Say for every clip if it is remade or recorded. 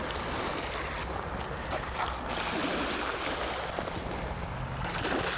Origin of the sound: recorded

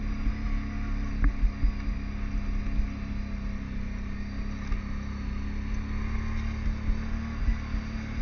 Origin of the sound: recorded